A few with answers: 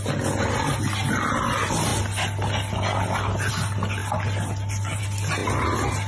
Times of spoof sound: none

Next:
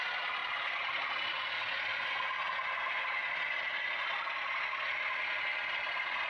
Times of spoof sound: none

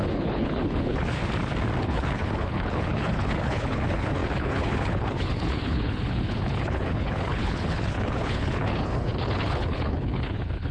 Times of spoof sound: 0.0-1.2 (codec, HILCodec); 1.8-10.7

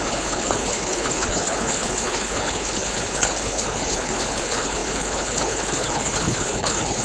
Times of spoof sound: 0.0-7.0 (codec, HILCodec)